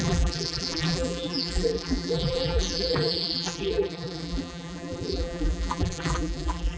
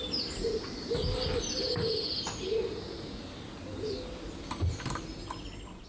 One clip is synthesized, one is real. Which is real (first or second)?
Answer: second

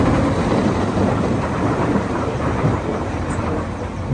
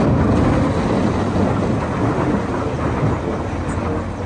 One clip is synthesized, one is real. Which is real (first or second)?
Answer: second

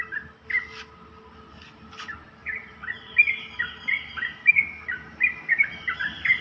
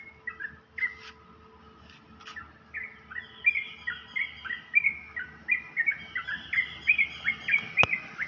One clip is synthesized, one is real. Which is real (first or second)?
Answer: second